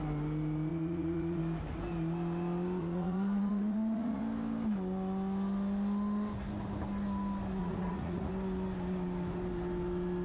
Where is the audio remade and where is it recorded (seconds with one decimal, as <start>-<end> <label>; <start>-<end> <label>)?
0.0-0.7 recorded; 0.7-1.4 remade; 1.4-2.8 recorded; 2.8-4.2 remade; 4.2-7.6 recorded; 7.6-8.3 remade; 8.3-10.2 recorded